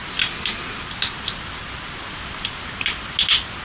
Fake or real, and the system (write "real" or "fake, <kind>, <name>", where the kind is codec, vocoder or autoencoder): real